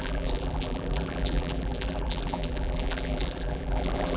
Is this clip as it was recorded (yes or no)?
no